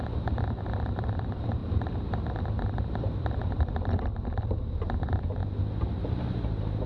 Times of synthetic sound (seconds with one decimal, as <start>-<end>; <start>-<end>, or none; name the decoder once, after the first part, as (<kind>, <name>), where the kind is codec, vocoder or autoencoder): 0.0-5.4 (vocoder, BigVGAN v2)